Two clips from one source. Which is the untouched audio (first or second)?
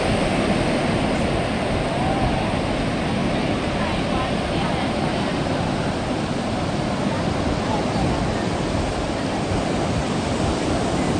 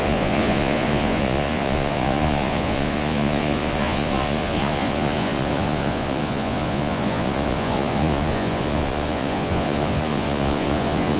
first